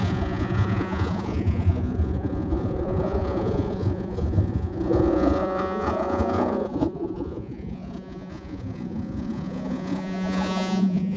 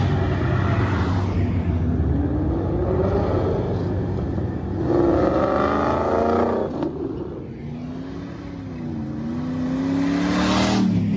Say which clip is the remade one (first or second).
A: first